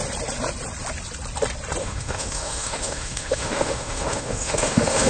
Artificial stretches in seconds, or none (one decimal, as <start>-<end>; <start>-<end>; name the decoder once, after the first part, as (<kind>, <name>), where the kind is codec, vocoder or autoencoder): 1.8-5.1 (autoencoder, DAC-VAE)